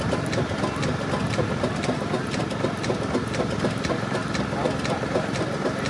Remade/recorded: recorded